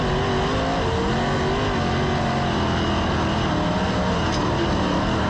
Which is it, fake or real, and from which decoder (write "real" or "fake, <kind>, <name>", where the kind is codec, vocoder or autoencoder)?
real